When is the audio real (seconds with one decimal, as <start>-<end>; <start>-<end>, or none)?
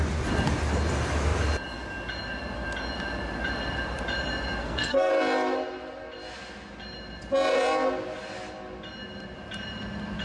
0.0-4.6; 5.1-10.2